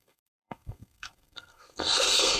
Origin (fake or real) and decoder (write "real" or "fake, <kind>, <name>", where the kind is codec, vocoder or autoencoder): fake, codec, SNAC